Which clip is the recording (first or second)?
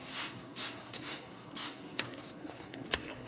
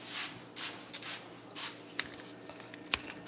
second